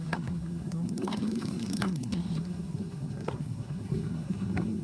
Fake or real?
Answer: fake